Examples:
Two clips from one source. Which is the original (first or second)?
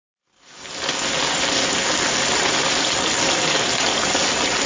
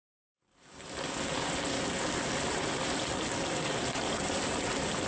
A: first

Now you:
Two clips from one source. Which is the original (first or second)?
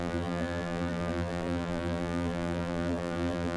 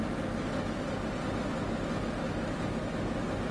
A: second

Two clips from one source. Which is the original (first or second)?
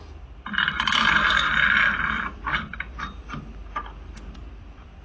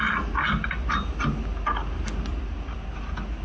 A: second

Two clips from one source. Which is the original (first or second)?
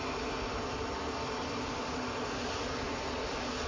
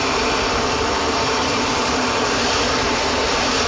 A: first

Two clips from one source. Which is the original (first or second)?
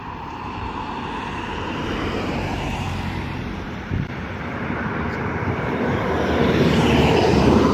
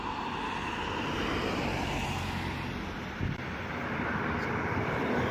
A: second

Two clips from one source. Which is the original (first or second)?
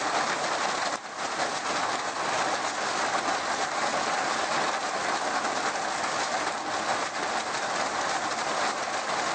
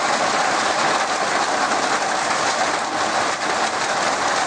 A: first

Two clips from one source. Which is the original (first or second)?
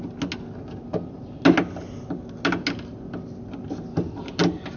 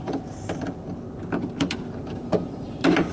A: first